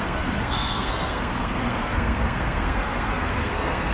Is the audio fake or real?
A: fake